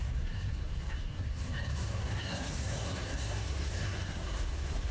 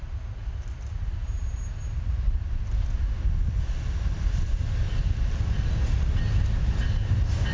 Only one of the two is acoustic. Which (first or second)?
second